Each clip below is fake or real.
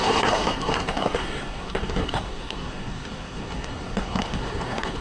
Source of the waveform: fake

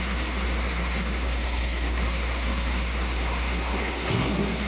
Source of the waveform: fake